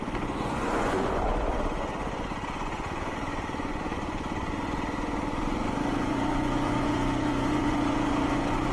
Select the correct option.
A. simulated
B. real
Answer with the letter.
A